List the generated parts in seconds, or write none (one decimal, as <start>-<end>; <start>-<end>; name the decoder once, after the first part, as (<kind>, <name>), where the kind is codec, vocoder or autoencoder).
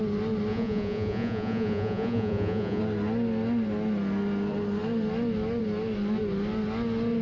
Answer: 0.5-2.8 (vocoder, Vocos)